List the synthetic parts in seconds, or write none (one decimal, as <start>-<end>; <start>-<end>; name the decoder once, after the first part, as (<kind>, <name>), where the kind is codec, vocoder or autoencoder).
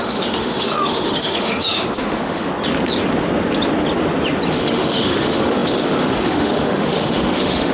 0.0-2.5 (autoencoder, DAC-VAE); 4.5-7.7